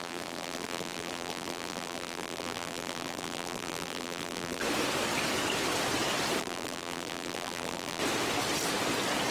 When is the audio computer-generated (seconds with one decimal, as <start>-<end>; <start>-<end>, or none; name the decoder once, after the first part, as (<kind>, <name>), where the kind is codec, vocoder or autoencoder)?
0.0-4.6 (vocoder, BigVGAN v2); 6.4-8.0